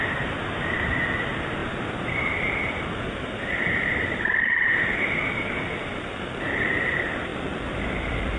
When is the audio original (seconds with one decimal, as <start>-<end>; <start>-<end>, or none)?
7.3-8.4